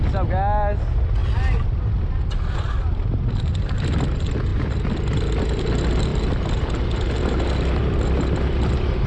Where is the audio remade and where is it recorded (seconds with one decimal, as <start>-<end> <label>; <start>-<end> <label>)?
0.0-9.1 recorded